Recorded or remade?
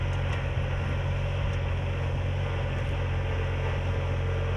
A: recorded